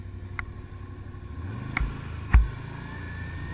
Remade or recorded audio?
recorded